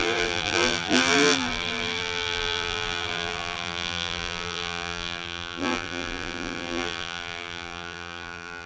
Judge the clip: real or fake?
fake